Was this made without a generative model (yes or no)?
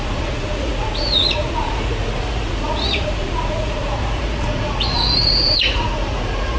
no